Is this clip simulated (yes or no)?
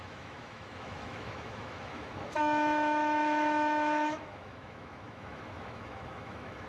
yes